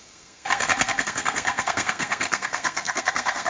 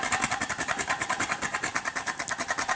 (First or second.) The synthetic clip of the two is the first